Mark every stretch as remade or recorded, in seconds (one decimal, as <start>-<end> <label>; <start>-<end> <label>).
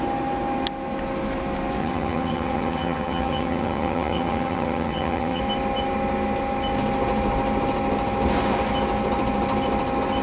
0.0-1.8 recorded; 1.8-5.4 remade; 5.4-10.2 recorded